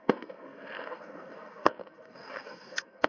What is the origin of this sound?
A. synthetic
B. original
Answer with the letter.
A